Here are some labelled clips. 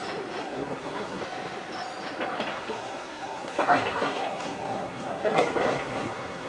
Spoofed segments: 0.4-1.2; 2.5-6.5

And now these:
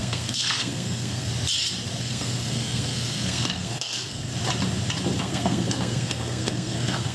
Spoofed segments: 0.0-1.3; 2.0-4.3; 5.2-7.1

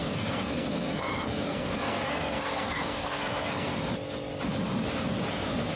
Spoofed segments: 0.0-3.7

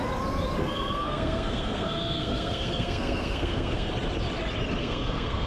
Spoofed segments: 0.6-3.9; 4.8-5.5

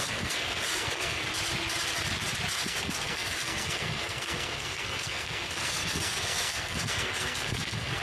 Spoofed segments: 0.0-1.3; 2.5-8.0

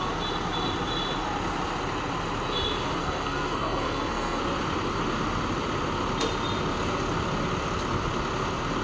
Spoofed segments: 3.0-4.4

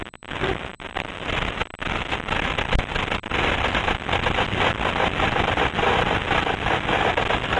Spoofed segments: none

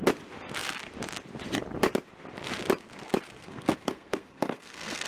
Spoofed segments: 3.4-5.1